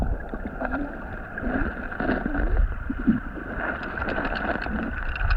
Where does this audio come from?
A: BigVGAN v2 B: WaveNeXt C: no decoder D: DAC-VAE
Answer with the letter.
A